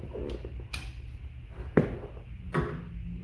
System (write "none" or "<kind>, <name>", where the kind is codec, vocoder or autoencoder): none